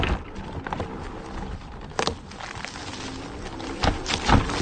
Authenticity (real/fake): real